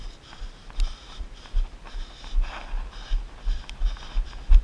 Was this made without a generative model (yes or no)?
yes